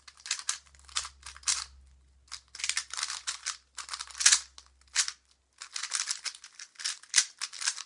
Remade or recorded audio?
recorded